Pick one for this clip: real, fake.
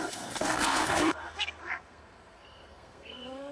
fake